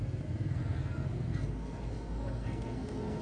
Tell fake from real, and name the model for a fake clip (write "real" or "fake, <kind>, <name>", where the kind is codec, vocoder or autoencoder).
fake, codec, SNAC